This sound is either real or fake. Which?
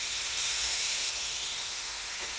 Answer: fake